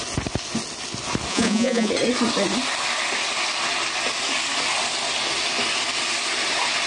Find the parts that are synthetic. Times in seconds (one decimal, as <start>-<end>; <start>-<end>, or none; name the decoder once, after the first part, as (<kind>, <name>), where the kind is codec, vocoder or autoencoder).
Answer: 1.3-1.9 (vocoder, Vocos)